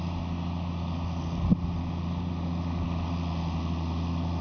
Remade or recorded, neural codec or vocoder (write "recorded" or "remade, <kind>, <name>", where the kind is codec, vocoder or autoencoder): recorded